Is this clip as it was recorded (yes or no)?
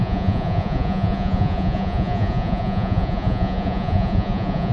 no